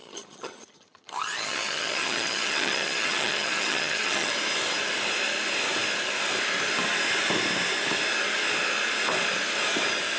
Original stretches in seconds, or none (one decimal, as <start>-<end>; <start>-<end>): 4.3-10.2